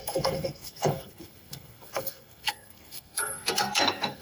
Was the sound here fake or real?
fake